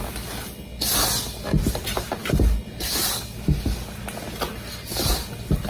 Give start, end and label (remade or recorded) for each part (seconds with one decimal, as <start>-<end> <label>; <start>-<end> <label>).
0.0-5.7 recorded